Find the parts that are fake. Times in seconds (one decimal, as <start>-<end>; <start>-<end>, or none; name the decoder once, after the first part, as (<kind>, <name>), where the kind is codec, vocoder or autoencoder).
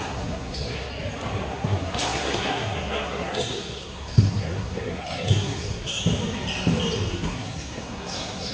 0.0-0.9 (codec, SNAC); 1.5-6.0; 7.1-8.5